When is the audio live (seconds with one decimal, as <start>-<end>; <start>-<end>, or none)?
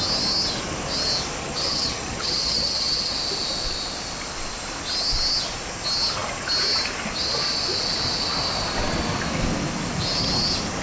0.0-1.4; 3.1-10.8